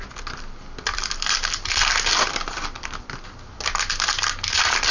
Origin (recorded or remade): recorded